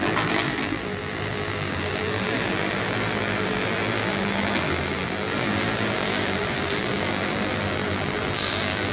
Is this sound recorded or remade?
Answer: remade